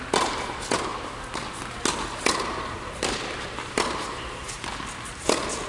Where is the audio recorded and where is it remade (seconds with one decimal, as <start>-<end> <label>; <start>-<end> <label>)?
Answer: 0.0-2.3 recorded; 2.3-4.6 remade; 4.6-5.7 recorded